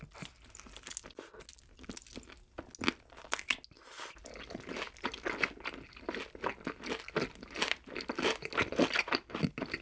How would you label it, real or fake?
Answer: real